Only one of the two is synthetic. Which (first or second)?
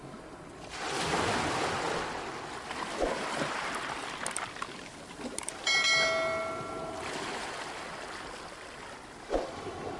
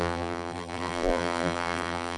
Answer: second